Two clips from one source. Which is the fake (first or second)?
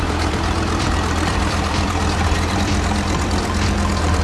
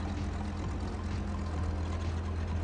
first